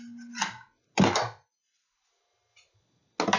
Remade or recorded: recorded